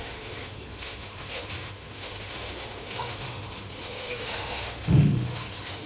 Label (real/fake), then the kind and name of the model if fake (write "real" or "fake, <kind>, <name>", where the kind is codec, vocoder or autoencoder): fake, autoencoder, DAC-VAE